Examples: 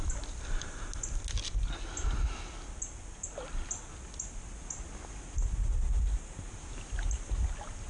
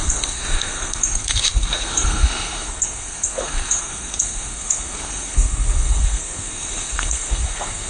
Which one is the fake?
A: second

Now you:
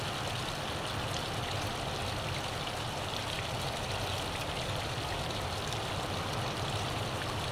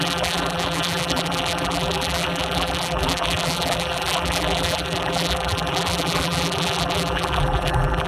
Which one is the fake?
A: second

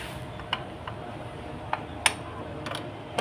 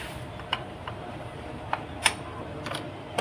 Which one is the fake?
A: second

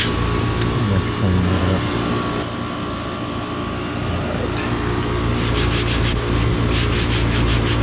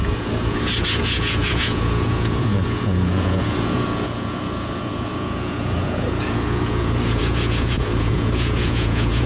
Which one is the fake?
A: second